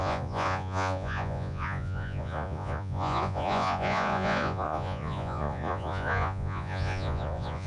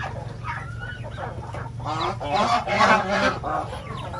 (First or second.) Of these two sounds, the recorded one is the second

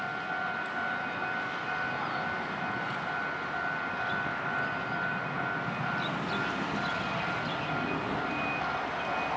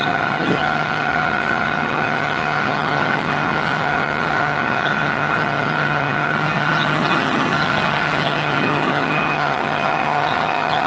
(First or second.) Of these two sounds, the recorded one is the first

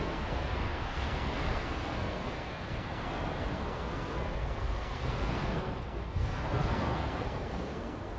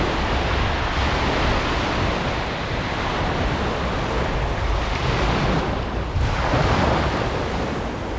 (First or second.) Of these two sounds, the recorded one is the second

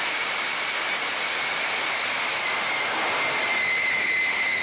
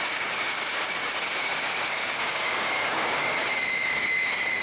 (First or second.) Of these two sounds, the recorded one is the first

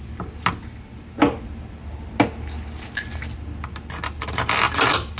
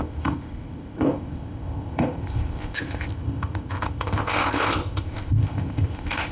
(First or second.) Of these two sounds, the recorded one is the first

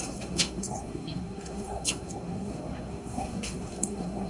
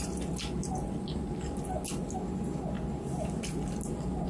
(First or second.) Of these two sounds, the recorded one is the second